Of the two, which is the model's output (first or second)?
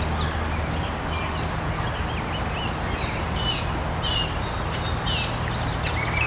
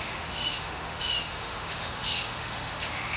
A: second